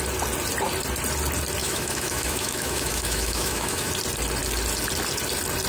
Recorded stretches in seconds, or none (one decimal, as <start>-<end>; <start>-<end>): 0.0-1.6; 3.9-5.7